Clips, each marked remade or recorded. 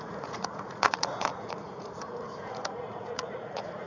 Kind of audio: remade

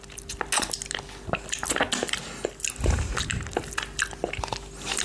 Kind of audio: recorded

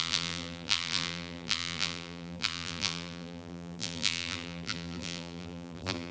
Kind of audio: remade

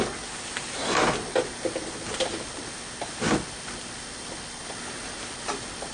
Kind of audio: recorded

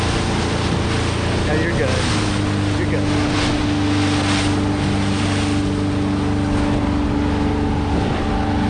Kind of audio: recorded